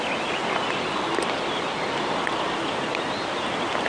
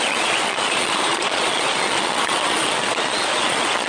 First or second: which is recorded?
first